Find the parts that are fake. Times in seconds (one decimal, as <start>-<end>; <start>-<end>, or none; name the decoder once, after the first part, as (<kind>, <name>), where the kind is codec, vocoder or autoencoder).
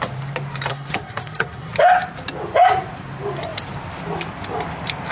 0.7-1.7 (codec, SNAC)